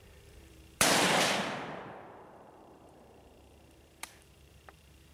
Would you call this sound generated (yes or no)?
yes